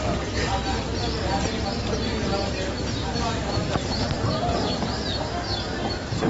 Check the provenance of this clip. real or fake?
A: real